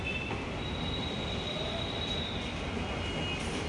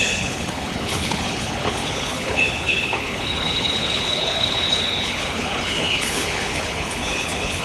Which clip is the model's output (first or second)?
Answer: second